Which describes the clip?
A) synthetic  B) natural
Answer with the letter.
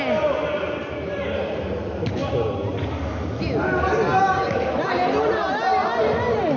B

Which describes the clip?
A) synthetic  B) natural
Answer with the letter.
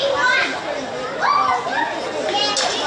B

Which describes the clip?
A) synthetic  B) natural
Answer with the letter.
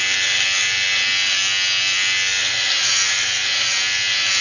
B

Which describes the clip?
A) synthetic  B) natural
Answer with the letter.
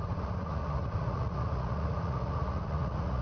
A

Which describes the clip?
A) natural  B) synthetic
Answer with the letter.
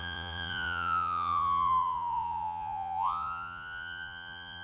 B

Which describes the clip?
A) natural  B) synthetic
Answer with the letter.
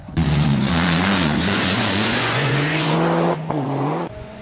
B